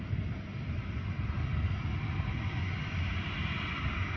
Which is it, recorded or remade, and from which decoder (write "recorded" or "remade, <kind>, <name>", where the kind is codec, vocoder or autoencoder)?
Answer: recorded